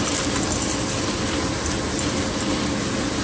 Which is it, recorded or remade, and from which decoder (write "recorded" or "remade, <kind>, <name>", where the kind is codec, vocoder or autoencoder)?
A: recorded